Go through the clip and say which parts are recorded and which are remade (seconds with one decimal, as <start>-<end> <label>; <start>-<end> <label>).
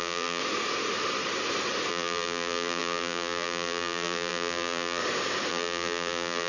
0.0-0.4 remade; 0.4-1.9 recorded; 1.9-5.0 remade; 5.0-5.5 recorded; 5.5-6.5 remade